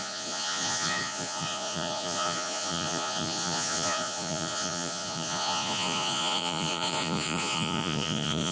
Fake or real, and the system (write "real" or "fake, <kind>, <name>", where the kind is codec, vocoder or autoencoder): fake, vocoder, Vocos